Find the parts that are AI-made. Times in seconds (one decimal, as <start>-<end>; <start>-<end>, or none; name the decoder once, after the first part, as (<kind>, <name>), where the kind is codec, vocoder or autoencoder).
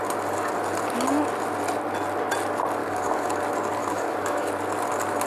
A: 2.8-3.4 (codec, DAC); 3.8-4.5